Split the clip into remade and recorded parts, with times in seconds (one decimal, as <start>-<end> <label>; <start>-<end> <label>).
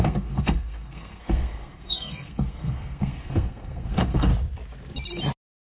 0.0-4.3 remade; 4.3-5.8 recorded